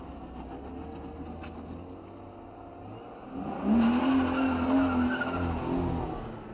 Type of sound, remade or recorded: recorded